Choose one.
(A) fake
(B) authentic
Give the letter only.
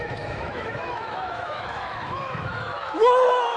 A